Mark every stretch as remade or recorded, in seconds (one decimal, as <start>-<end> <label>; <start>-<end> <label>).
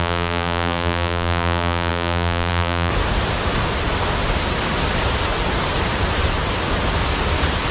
0.0-2.9 remade; 2.9-7.7 recorded